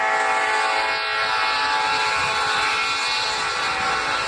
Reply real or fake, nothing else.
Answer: real